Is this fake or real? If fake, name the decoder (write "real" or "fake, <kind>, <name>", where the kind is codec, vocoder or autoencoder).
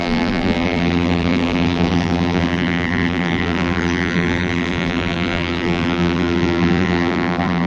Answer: fake, vocoder, BigVGAN v2